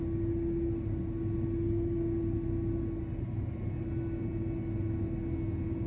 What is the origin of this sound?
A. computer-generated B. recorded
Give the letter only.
B